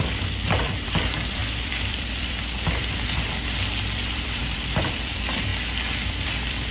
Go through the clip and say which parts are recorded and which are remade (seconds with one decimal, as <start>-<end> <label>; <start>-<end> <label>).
0.0-5.5 remade; 5.5-6.1 recorded; 6.1-6.7 remade

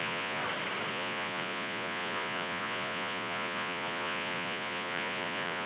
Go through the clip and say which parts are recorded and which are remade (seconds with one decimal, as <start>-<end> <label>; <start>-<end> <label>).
0.0-0.4 remade; 0.4-0.9 recorded; 0.9-5.7 remade

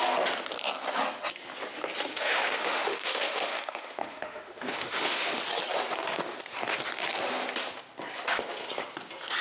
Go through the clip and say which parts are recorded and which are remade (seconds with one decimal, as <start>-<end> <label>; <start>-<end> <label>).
0.0-2.1 recorded; 2.1-5.4 remade; 5.4-9.4 recorded